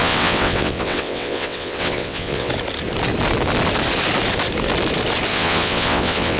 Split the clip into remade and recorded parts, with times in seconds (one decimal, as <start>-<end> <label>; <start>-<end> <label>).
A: 0.0-2.5 remade; 2.5-5.3 recorded; 5.3-6.4 remade

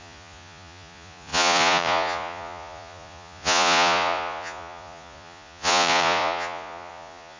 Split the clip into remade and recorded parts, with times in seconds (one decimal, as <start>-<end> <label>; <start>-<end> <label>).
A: 0.0-7.4 remade

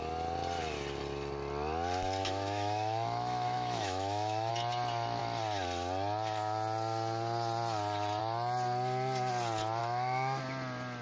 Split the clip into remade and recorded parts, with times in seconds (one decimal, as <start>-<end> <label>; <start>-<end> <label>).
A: 0.0-2.2 recorded; 2.2-4.5 remade; 4.5-9.8 recorded; 9.8-10.4 remade; 10.4-11.0 recorded

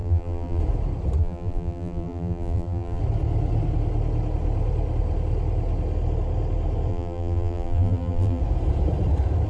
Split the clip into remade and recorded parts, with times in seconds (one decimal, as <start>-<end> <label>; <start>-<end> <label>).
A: 0.0-0.6 remade; 0.6-1.2 recorded; 1.2-3.0 remade; 3.0-6.9 recorded; 6.9-8.4 remade; 8.4-9.5 recorded

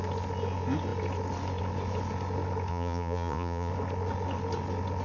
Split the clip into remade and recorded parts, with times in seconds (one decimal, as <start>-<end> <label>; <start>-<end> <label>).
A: 0.0-2.7 recorded; 2.7-3.7 remade; 3.7-5.0 recorded

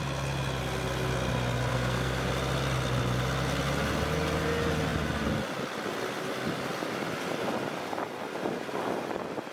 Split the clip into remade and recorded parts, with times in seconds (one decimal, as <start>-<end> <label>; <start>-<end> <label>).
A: 0.0-1.7 recorded; 1.7-2.3 remade; 2.3-9.5 recorded

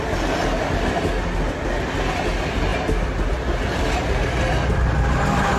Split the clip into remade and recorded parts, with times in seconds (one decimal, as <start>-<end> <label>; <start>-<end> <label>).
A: 0.0-5.6 recorded

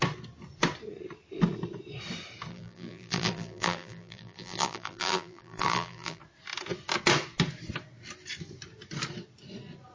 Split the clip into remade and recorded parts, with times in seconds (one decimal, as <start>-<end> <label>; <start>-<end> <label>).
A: 0.0-2.5 recorded; 2.5-6.2 remade; 6.2-9.9 recorded